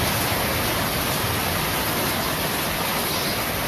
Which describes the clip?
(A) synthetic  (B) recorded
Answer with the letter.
B